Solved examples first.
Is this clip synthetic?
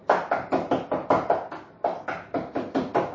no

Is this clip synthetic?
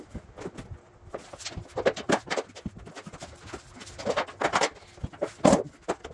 no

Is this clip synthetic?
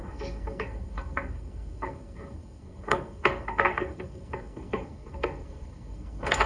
yes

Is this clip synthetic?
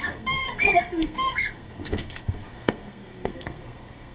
yes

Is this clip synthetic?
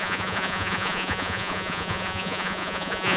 yes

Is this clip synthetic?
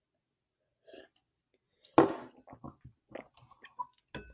no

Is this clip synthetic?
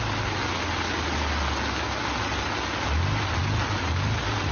no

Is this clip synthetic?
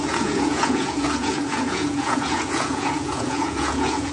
yes